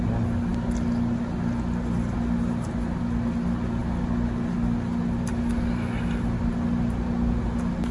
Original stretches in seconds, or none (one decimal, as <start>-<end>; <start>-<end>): 0.0-7.9